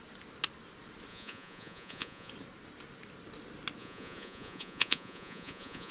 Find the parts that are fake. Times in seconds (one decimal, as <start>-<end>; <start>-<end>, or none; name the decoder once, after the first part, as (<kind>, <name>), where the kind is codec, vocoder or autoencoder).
1.1-2.3 (vocoder, Vocos); 3.8-5.9